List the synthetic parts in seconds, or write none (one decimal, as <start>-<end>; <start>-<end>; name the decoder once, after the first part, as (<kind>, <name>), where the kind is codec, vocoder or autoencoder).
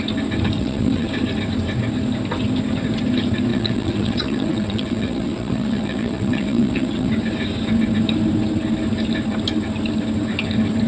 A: 0.6-1.1 (vocoder, WaveNeXt); 3.5-7.1